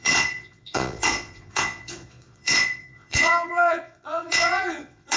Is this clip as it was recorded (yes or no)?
no